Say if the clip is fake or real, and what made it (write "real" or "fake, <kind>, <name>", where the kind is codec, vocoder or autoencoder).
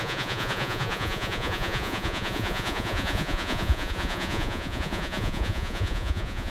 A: fake, vocoder, Vocos